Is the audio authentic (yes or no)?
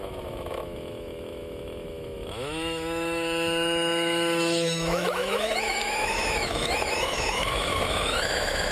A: no